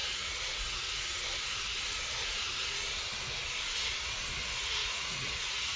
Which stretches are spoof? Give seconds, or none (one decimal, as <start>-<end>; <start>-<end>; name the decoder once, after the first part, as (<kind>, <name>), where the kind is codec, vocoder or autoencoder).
0.0-1.1 (vocoder, Vocos); 4.6-5.8